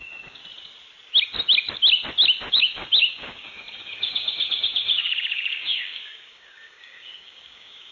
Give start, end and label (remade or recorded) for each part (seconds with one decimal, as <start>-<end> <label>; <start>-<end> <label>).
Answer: 0.0-0.4 remade; 0.4-2.5 recorded; 2.5-7.9 remade